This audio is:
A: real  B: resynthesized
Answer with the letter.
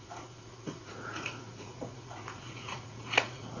B